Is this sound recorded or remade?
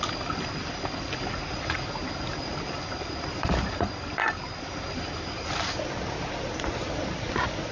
recorded